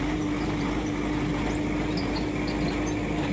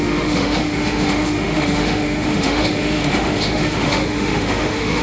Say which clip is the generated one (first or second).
second